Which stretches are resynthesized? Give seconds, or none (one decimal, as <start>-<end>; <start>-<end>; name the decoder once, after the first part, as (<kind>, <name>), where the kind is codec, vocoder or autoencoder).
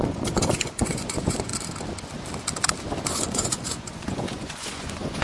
0.0-1.5 (vocoder, Vocos); 3.1-5.2